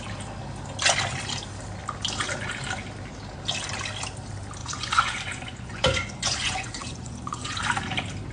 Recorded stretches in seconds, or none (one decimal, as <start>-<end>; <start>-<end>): 0.0-4.6; 7.6-8.3